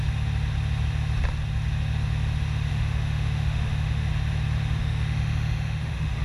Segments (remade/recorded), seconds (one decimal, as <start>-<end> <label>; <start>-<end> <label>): 0.0-2.7 recorded; 2.7-4.1 remade; 4.1-4.8 recorded; 4.8-6.2 remade

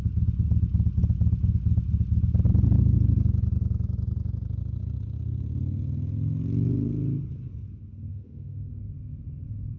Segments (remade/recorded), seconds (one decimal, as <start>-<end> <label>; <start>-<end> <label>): 0.0-8.1 recorded; 8.1-8.8 remade; 8.8-9.8 recorded

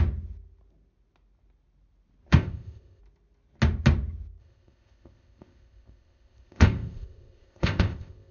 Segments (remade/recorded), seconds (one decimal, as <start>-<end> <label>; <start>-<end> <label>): 0.0-2.3 recorded; 2.3-3.0 remade; 3.0-4.4 recorded; 4.4-8.3 remade

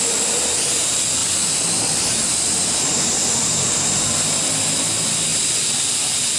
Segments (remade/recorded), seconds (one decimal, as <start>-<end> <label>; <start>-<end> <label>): 0.0-1.2 recorded; 1.2-2.1 remade; 2.1-3.2 recorded; 3.2-4.4 remade; 4.4-5.3 recorded; 5.3-5.8 remade; 5.8-6.4 recorded

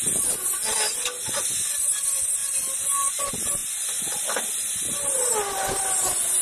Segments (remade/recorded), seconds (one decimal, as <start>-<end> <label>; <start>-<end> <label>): 0.0-6.4 recorded

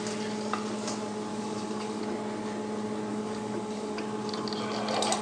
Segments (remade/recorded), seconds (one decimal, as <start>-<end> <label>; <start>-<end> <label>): 0.0-1.3 recorded; 1.3-2.0 remade; 2.0-3.1 recorded; 3.1-4.0 remade; 4.0-5.2 recorded

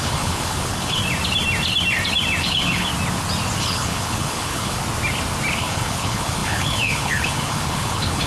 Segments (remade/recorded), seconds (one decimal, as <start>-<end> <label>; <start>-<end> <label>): 0.0-1.0 remade; 1.0-2.4 recorded; 2.4-2.9 remade; 2.9-3.6 recorded; 3.6-4.8 remade; 4.8-5.6 recorded; 5.6-8.3 remade

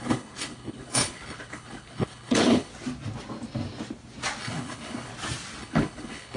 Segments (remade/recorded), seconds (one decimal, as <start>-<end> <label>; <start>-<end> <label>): 0.0-2.7 remade; 2.7-4.4 recorded; 4.4-5.1 remade; 5.1-5.6 recorded; 5.6-6.4 remade